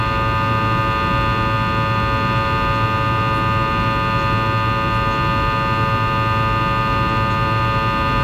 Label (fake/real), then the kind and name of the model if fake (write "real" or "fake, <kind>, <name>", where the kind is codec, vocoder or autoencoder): real